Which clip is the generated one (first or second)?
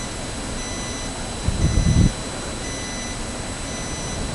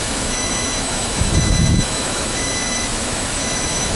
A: second